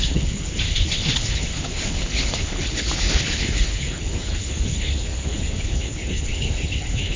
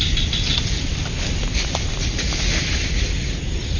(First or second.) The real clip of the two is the second